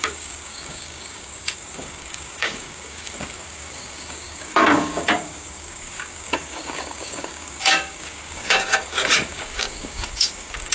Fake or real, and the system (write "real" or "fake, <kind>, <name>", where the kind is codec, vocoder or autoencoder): fake, codec, DAC